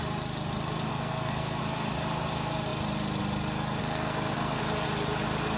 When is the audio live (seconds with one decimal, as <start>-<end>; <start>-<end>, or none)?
0.0-0.9; 1.6-3.8; 4.6-5.6